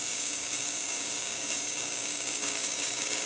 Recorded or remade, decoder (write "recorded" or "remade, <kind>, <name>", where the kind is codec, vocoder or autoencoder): remade, codec, DAC